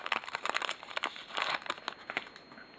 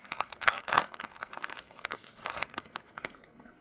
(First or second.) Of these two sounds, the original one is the first